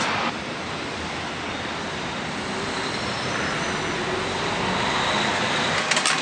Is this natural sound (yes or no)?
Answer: yes